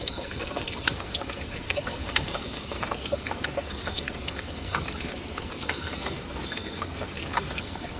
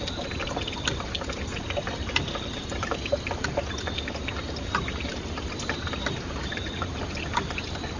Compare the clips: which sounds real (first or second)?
second